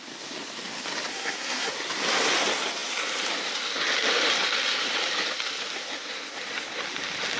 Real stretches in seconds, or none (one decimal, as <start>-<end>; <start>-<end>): 0.0-1.1; 1.7-7.4